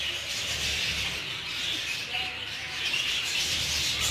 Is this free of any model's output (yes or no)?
yes